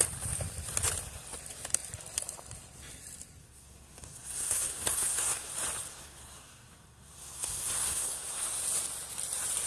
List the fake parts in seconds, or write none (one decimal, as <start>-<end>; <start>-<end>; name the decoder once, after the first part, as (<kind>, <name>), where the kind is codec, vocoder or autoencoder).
3.4-5.5 (codec, SNAC); 5.9-8.6

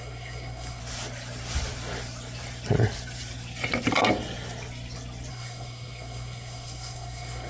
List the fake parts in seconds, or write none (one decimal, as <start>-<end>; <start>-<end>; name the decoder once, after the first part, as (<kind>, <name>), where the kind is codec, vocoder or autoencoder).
0.0-0.8 (codec, SNAC); 5.3-7.5

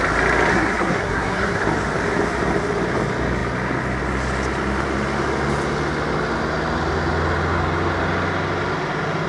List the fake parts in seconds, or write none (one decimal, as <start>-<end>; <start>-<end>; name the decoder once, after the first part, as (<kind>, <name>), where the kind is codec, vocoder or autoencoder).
0.5-1.6 (codec, SNAC)

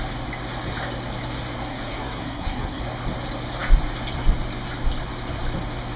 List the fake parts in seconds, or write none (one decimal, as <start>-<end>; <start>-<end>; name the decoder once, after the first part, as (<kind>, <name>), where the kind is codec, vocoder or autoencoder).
1.7-2.8 (codec, SNAC)

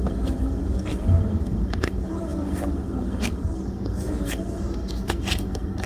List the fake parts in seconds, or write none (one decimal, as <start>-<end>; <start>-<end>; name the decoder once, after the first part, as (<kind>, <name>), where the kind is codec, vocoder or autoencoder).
0.0-5.9 (codec, SNAC)

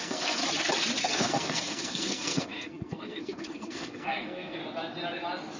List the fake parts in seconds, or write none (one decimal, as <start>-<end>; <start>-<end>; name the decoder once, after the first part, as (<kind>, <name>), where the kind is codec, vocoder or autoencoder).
0.0-0.4 (codec, SNAC); 1.0-4.6

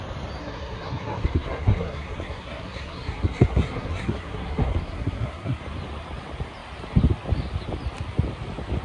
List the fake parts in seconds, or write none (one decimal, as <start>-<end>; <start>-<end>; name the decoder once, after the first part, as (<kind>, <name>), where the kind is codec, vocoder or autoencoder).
0.4-5.6 (codec, SNAC)